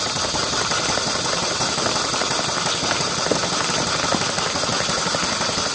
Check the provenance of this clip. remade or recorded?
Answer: recorded